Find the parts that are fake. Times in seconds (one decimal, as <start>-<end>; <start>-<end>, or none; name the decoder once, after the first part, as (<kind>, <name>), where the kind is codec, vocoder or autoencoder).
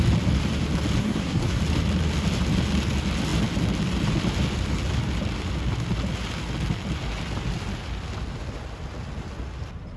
1.0-1.6 (codec, SNAC)